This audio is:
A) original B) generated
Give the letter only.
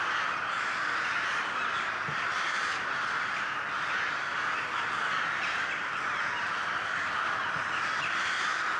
A